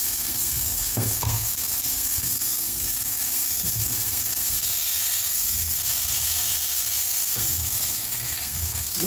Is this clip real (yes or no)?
no